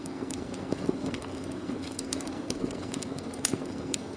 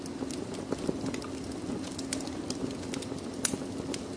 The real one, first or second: second